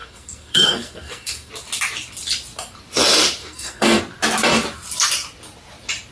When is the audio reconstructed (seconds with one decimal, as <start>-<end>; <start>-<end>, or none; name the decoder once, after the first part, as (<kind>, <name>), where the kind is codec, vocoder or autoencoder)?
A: 0.0-1.5 (codec, SNAC); 3.4-4.0